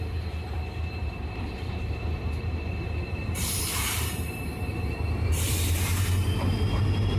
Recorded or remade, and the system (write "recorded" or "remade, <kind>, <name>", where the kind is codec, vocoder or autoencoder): remade, vocoder, BigVGAN v2